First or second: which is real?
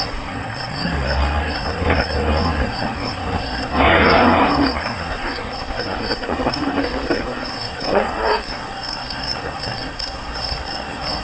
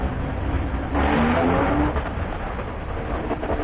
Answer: second